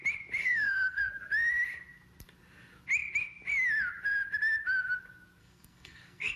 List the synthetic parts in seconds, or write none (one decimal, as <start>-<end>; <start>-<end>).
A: 0.4-1.0; 5.4-6.4